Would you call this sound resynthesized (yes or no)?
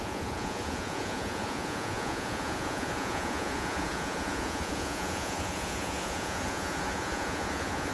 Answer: yes